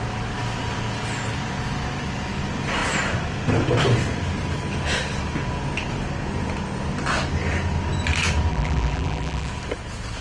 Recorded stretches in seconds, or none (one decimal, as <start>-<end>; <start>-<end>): 0.0-8.5; 9.5-10.2